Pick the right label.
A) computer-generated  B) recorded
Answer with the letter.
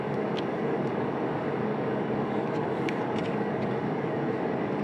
A